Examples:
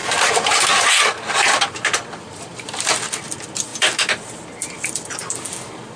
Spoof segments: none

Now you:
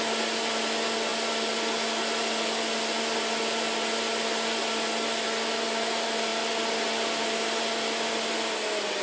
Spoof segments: none

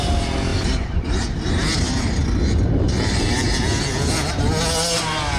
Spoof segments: 0.0-2.2

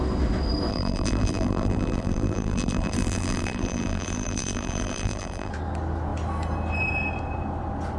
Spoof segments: 0.7-5.5

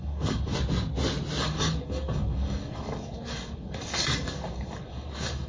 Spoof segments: 0.0-0.5; 1.4-5.5

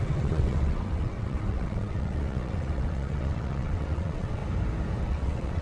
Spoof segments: 0.0-4.4; 5.0-5.6

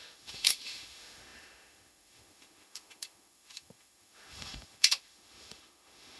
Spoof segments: 0.0-6.2

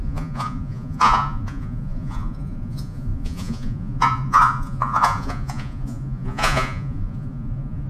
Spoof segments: 0.0-7.9